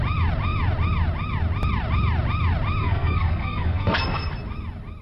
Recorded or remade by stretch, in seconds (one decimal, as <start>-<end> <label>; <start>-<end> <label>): 0.0-2.8 recorded; 2.8-4.3 remade; 4.3-5.0 recorded